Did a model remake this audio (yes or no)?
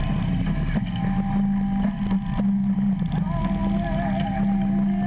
no